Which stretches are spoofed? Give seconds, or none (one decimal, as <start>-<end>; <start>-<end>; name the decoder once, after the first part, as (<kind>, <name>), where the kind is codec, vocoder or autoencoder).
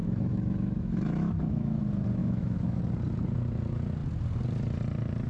0.0-1.8 (autoencoder, DAC-VAE); 2.2-2.8